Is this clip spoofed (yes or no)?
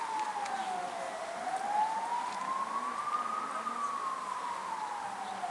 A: no